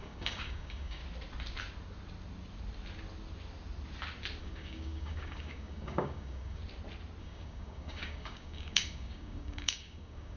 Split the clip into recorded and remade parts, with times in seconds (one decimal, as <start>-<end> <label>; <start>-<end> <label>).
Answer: 0.0-1.0 remade; 1.0-4.4 recorded; 4.4-6.6 remade; 6.6-7.2 recorded; 7.2-10.4 remade